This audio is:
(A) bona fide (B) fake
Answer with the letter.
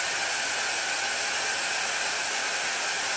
A